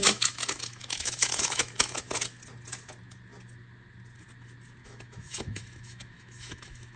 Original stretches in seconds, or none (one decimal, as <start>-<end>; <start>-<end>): 2.1-4.8